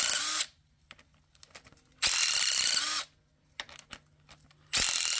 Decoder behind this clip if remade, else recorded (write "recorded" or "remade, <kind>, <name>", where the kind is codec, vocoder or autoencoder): recorded